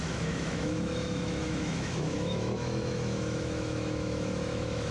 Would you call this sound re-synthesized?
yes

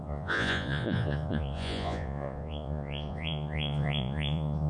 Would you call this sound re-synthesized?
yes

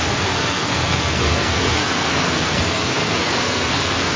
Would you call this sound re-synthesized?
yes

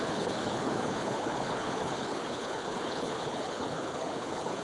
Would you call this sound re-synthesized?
yes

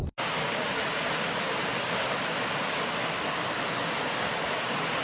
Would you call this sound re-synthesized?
no